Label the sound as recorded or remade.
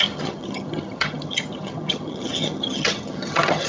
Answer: remade